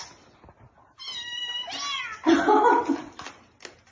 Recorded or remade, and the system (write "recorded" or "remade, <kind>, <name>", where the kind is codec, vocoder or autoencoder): recorded